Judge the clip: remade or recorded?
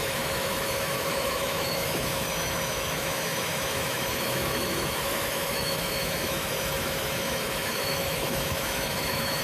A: remade